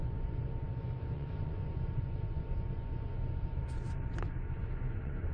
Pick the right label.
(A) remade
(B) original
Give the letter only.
A